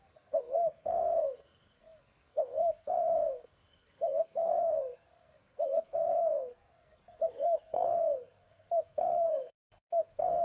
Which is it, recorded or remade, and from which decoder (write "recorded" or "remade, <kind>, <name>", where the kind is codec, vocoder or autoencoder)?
remade, codec, SNAC